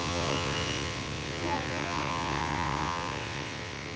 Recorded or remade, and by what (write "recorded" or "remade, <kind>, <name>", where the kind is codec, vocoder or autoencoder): remade, vocoder, WaveNeXt